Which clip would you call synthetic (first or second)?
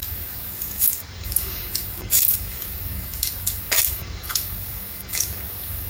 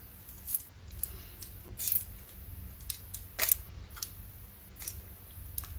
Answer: first